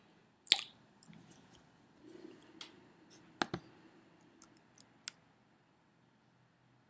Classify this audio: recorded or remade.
recorded